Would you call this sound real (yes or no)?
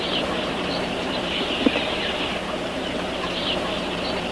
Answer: no